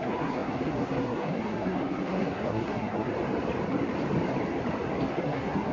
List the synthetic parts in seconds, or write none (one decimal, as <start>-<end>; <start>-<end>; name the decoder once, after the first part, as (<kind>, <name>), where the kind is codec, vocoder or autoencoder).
0.0-3.1 (codec, SNAC); 5.1-5.7